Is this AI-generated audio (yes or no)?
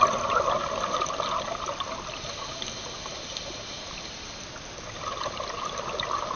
no